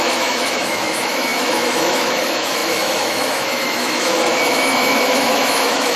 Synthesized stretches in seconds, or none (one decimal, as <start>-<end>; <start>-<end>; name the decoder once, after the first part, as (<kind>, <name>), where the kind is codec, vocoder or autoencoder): 0.0-6.0 (autoencoder, DAC-VAE)